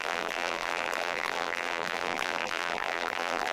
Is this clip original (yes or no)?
no